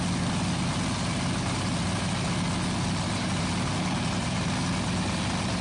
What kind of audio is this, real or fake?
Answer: real